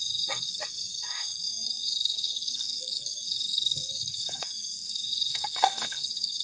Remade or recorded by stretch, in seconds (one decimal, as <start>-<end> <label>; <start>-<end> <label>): 0.0-6.4 remade